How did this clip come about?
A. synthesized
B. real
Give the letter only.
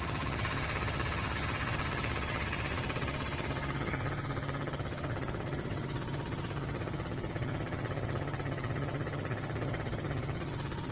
A